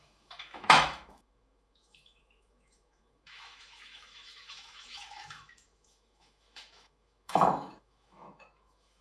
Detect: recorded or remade remade